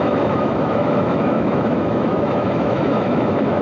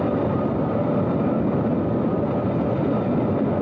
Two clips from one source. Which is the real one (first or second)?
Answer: second